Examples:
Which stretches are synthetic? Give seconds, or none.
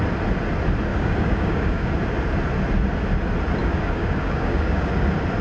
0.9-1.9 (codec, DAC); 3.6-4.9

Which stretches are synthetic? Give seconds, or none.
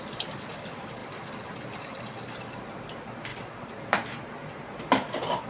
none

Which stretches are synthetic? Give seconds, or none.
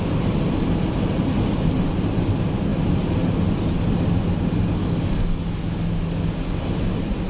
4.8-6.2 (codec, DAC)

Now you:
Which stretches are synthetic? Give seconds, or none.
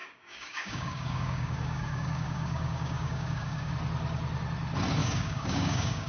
0.0-3.7 (codec, DAC); 5.0-6.1